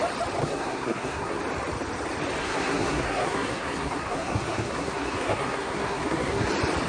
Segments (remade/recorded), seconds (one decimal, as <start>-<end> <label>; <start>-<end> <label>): 0.0-0.4 recorded; 0.4-1.4 remade; 1.4-2.4 recorded; 2.4-6.5 remade; 6.5-6.9 recorded